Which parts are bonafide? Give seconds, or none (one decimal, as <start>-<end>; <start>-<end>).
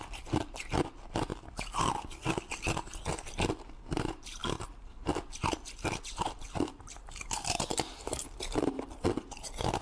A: 1.3-3.1